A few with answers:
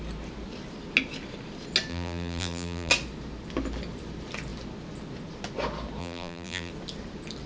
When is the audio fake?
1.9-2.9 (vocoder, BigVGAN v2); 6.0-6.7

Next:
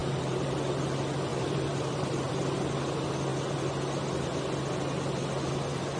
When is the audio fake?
0.0-0.5 (vocoder, BigVGAN v2); 1.3-2.3